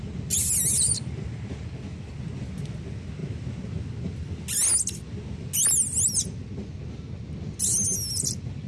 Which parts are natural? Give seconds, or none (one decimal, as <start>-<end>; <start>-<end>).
0.0-8.7